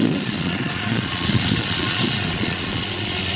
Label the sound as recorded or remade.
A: remade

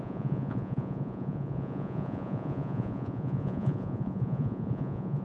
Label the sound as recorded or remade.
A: remade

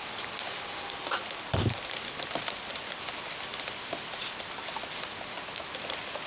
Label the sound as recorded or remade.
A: recorded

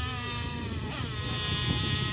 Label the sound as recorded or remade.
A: recorded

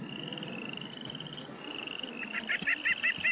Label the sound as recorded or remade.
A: recorded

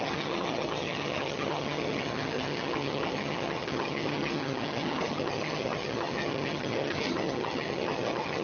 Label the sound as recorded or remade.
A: remade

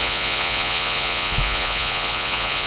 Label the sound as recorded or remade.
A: remade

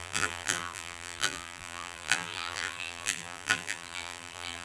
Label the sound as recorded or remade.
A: remade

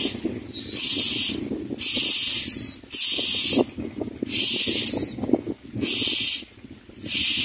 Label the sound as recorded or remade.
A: recorded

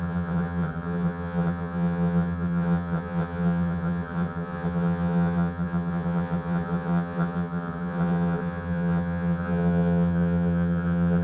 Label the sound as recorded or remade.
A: remade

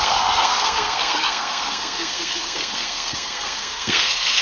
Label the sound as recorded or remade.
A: remade